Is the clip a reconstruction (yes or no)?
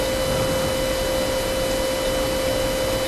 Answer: no